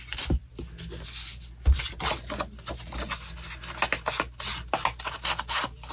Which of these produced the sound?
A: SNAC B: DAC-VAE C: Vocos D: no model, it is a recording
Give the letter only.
D